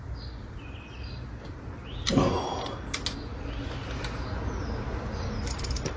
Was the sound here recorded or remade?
recorded